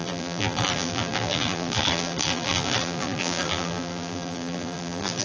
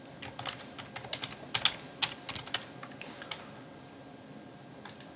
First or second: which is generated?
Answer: first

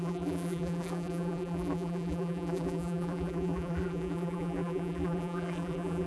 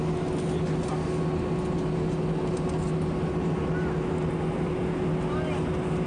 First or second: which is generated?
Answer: first